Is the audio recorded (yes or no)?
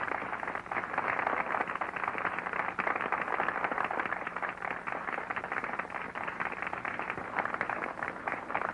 yes